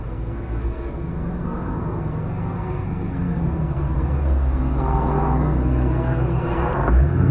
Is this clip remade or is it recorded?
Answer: remade